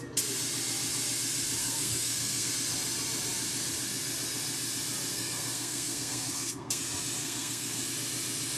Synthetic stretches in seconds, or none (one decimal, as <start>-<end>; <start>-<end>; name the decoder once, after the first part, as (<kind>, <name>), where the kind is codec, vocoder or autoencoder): 1.6-2.5 (codec, SNAC); 5.1-6.8; 7.2-7.9